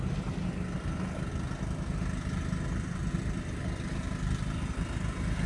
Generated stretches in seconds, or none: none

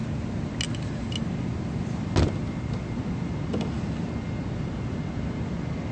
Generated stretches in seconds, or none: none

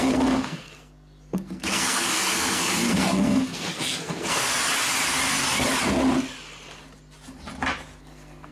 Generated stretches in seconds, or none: 0.0-4.5; 8.0-8.5

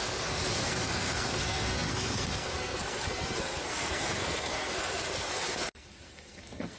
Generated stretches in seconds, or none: 0.0-6.8

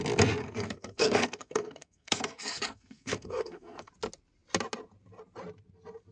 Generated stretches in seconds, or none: 0.4-3.9

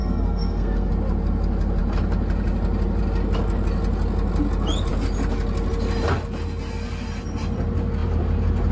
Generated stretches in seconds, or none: 0.0-0.9

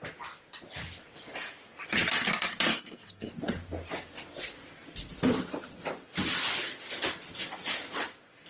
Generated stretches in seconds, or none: 2.7-3.3